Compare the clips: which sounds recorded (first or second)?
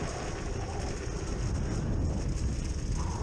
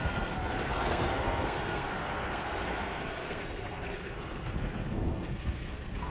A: first